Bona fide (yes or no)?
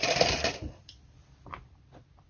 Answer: no